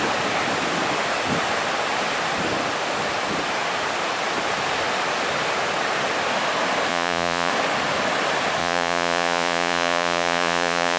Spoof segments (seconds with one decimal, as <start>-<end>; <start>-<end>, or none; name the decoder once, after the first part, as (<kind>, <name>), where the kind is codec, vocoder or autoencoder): 6.9-7.5 (vocoder, Vocos); 8.6-11.0